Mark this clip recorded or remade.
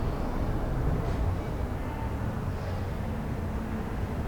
recorded